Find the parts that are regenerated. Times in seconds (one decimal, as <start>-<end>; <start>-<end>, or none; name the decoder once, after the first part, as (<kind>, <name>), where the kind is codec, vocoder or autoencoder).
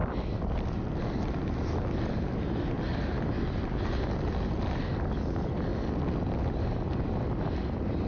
none